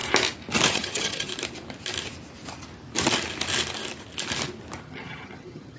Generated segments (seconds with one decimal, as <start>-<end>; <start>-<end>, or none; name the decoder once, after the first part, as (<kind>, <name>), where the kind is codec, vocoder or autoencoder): 0.7-1.3 (vocoder, HiFi-GAN); 4.8-5.8